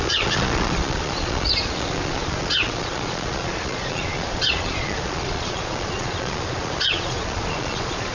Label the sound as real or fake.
fake